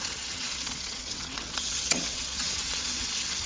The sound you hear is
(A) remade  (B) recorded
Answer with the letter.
A